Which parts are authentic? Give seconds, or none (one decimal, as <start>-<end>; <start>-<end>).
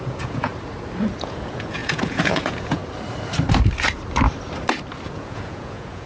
0.5-1.2; 2.8-5.1